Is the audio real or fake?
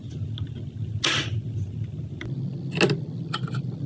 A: real